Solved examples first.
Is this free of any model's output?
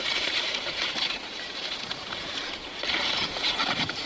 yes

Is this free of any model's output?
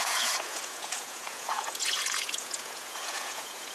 no